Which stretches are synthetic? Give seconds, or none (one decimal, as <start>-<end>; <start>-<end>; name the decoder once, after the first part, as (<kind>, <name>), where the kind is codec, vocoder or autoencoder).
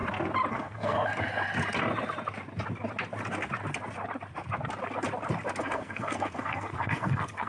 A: 0.5-1.1 (codec, SNAC); 5.6-7.5